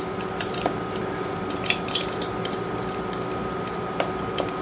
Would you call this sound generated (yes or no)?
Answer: no